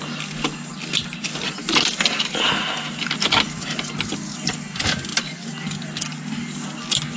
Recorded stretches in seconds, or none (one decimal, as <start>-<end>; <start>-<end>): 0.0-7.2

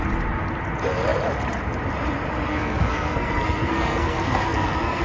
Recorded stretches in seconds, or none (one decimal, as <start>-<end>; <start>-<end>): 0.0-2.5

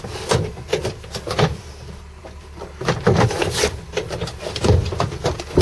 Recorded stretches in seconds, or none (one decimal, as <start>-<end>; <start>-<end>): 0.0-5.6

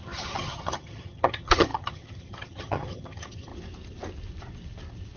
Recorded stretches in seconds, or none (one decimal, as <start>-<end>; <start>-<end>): 3.5-5.2